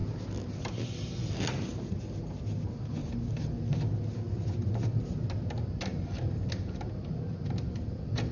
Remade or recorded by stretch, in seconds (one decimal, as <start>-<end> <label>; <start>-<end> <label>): 0.0-3.0 recorded; 3.0-3.5 remade; 3.5-5.9 recorded; 5.9-6.5 remade; 6.5-8.3 recorded